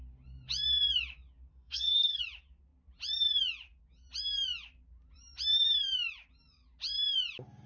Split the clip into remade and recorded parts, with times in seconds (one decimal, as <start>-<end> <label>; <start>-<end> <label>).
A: 0.0-1.5 recorded; 1.5-2.2 remade; 2.2-7.7 recorded

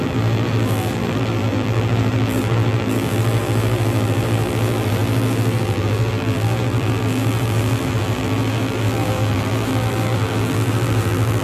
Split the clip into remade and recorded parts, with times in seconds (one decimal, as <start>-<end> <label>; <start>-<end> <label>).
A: 0.0-11.4 remade

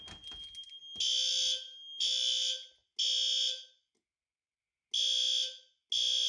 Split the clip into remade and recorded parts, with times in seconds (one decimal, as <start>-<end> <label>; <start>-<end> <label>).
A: 0.0-6.3 recorded

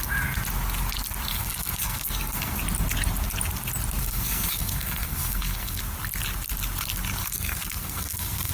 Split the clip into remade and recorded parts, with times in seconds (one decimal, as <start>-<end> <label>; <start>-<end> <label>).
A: 0.0-1.3 recorded; 1.3-2.6 remade; 2.6-4.0 recorded; 4.0-5.8 remade; 5.8-7.2 recorded; 7.2-8.5 remade